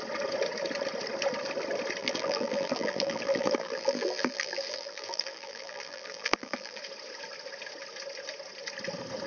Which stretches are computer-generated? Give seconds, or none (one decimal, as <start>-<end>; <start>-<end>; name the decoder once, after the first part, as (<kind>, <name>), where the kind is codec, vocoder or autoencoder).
2.0-6.8 (vocoder, BigVGAN v2)